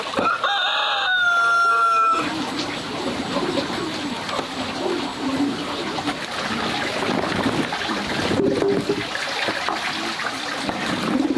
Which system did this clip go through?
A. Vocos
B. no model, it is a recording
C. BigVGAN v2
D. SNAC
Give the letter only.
B